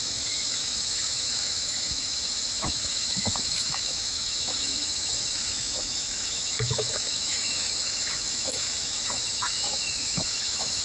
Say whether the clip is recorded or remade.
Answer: remade